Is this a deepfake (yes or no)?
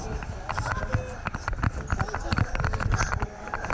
no